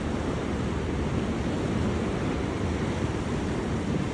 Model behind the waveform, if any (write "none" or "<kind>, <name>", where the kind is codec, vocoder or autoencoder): none